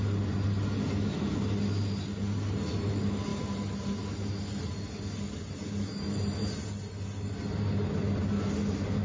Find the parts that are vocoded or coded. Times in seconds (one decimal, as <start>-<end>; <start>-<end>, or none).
none